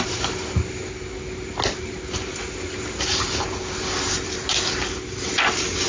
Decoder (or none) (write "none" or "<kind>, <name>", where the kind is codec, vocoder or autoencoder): none